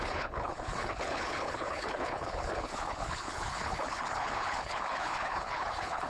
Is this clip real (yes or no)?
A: no